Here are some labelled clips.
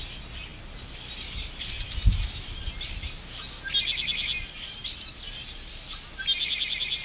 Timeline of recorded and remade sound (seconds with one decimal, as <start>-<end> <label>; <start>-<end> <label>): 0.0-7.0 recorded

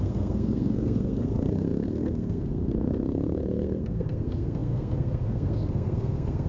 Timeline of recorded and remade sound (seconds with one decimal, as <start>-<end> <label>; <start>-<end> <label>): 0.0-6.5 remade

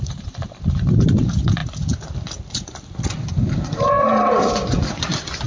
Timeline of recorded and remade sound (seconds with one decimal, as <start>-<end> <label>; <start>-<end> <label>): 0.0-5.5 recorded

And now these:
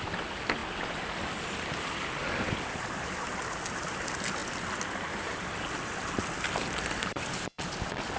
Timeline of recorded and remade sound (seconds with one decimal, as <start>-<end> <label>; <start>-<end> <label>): 0.0-8.2 recorded